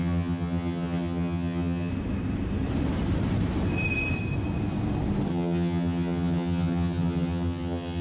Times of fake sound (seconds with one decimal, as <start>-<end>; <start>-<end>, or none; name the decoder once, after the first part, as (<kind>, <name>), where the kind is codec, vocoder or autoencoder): 0.0-1.9 (vocoder, HiFi-GAN); 5.3-8.0

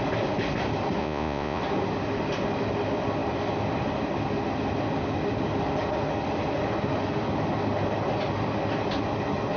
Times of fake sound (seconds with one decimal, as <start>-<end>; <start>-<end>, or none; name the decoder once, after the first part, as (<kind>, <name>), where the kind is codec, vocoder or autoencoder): 1.0-1.6 (vocoder, Vocos)

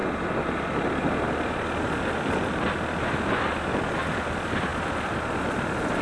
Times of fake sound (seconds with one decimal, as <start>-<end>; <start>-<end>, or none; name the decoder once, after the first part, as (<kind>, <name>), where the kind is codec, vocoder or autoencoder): none

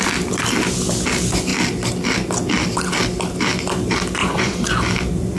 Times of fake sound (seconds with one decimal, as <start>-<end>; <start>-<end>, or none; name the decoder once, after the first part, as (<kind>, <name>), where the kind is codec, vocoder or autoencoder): 4.2-4.7 (vocoder, Vocos)

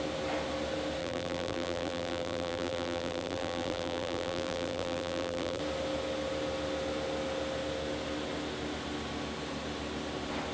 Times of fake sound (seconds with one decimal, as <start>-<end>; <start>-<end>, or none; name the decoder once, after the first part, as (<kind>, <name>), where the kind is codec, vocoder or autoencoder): 1.0-5.6 (vocoder, BigVGAN v2)